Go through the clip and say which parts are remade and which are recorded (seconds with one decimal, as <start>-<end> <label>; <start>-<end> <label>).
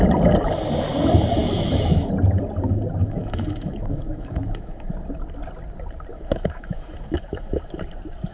0.0-1.4 recorded; 1.4-2.1 remade; 2.1-3.0 recorded; 3.0-4.9 remade; 4.9-6.1 recorded; 6.1-7.6 remade; 7.6-8.3 recorded